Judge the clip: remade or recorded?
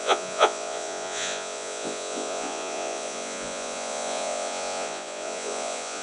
remade